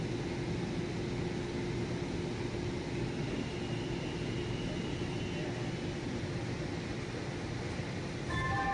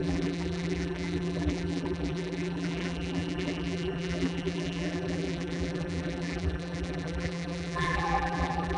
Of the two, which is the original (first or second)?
first